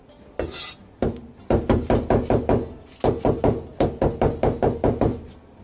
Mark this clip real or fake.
real